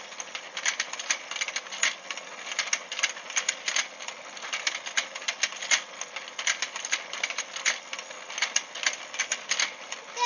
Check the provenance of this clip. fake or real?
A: real